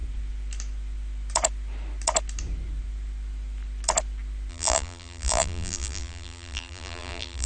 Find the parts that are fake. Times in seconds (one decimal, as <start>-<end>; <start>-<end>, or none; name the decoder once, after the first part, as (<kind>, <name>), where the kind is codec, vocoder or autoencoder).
4.5-7.5 (vocoder, BigVGAN v2)